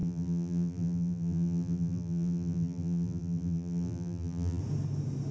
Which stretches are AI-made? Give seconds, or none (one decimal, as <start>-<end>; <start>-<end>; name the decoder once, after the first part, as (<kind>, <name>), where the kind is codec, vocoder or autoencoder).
0.0-4.6 (vocoder, BigVGAN v2)